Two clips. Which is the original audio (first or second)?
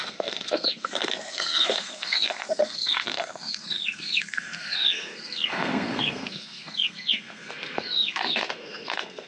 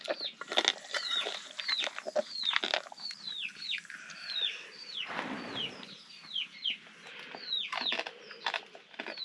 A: second